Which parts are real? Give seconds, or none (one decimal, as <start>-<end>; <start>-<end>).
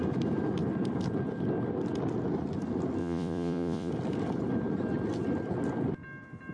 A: 0.0-3.0; 3.9-6.5